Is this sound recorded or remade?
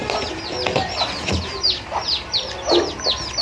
recorded